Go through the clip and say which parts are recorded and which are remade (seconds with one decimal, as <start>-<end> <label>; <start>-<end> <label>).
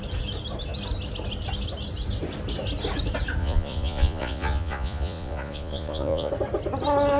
0.0-3.4 recorded; 3.4-6.3 remade; 6.3-7.2 recorded